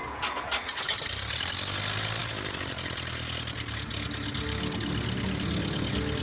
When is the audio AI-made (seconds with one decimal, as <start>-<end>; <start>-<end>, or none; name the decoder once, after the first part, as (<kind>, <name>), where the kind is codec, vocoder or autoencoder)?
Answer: none